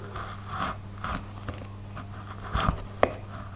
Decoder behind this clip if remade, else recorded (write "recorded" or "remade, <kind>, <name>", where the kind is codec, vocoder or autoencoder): recorded